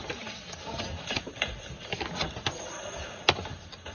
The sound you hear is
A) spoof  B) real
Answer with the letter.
B